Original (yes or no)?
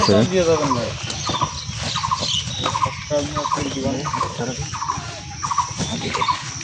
yes